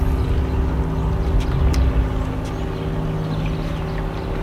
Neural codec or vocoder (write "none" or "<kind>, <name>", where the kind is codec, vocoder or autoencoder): none